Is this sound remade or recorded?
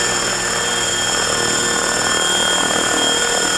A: recorded